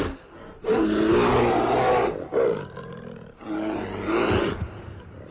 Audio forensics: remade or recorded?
recorded